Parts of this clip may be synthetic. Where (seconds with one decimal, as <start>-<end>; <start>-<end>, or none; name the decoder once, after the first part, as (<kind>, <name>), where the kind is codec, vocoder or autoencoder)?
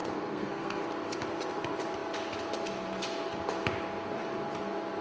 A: 0.0-0.8 (codec, SNAC)